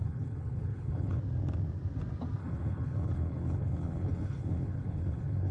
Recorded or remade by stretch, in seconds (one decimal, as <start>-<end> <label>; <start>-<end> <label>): 0.0-1.2 remade; 1.2-2.4 recorded; 2.4-5.5 remade